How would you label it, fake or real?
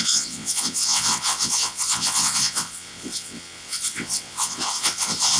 fake